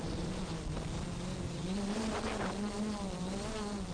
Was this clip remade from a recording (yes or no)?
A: no